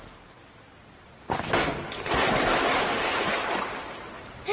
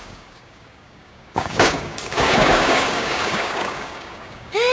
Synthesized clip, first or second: second